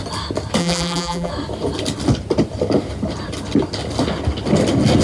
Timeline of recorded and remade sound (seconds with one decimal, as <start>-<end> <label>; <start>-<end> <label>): 0.0-0.6 recorded; 0.6-1.3 remade; 1.3-5.0 recorded